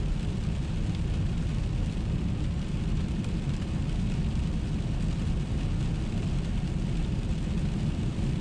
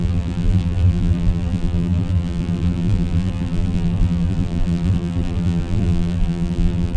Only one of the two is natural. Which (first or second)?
first